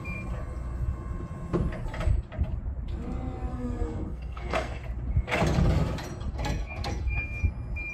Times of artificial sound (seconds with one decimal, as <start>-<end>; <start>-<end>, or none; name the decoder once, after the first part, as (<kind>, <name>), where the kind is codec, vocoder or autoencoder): 3.5-4.8 (codec, SNAC); 6.3-7.4